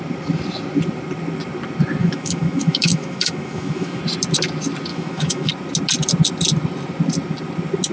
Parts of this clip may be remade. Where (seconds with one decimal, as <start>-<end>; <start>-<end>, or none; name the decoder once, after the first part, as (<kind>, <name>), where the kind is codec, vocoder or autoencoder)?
2.0-4.0 (autoencoder, DAC-VAE); 4.9-5.5